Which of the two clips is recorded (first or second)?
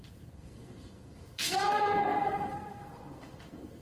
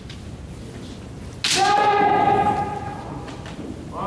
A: second